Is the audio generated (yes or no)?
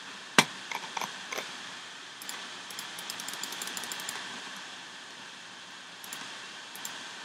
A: yes